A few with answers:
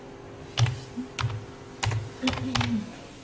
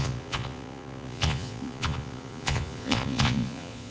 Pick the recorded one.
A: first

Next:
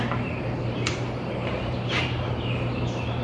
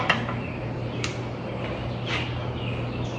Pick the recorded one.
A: second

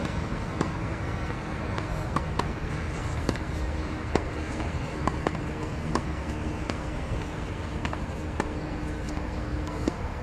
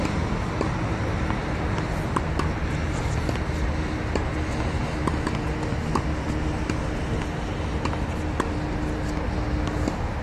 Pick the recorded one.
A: second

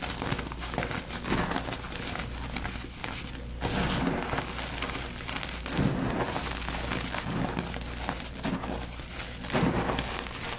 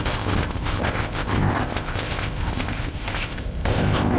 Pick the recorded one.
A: first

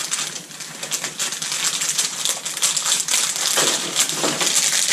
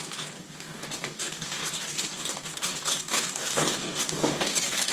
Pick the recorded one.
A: first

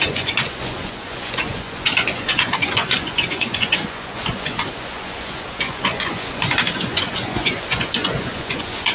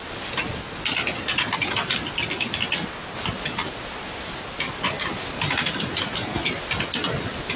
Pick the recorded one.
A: second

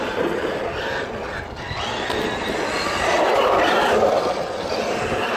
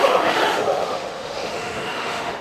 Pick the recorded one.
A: first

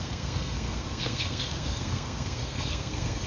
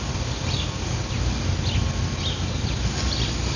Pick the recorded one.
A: second